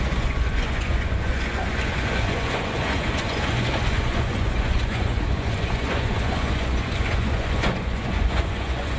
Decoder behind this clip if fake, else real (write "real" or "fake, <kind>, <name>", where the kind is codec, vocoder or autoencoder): fake, vocoder, Vocos